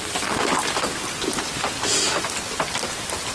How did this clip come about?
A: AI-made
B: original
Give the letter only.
B